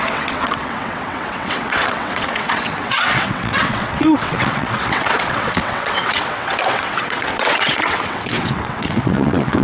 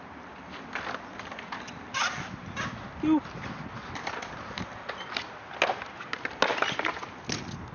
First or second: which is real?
second